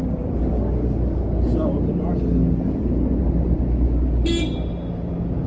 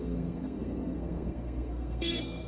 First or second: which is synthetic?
second